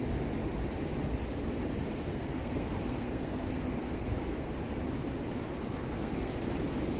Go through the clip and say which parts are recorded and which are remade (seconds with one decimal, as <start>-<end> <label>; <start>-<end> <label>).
0.0-2.1 recorded; 2.1-4.5 remade; 4.5-5.8 recorded; 5.8-6.3 remade; 6.3-7.0 recorded